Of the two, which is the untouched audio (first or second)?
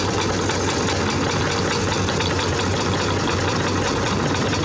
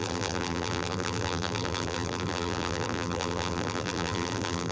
first